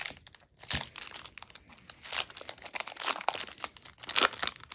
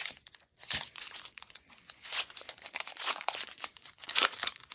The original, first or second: first